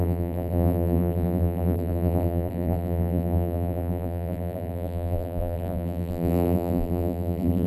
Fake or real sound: fake